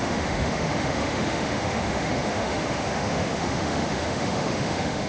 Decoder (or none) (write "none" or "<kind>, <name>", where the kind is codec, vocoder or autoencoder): autoencoder, DAC-VAE